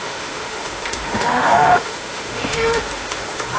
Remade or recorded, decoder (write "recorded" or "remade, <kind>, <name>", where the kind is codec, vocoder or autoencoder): remade, autoencoder, DAC-VAE